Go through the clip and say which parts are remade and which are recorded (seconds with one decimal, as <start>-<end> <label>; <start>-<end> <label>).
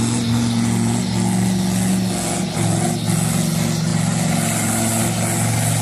0.0-5.8 recorded